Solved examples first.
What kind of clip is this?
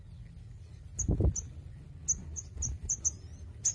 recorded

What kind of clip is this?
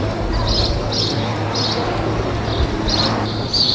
recorded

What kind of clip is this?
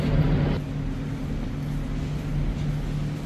recorded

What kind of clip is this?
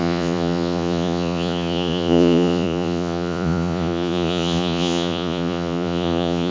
remade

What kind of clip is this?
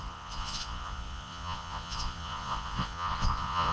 remade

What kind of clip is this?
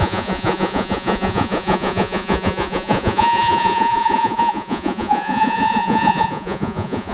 remade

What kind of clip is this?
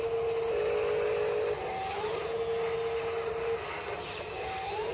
recorded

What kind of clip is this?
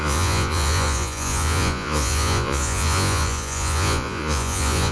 remade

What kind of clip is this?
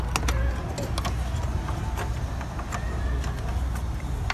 recorded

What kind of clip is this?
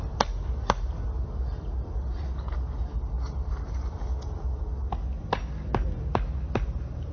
recorded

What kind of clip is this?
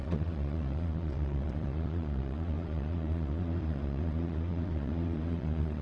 remade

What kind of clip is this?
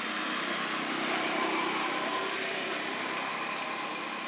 recorded